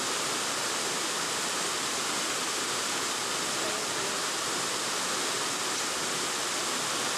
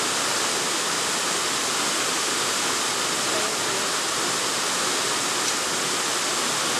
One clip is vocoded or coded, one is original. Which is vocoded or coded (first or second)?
first